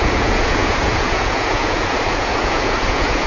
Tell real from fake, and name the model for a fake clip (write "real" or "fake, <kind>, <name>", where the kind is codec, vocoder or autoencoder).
fake, vocoder, Vocos